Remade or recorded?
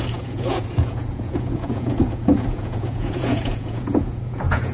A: remade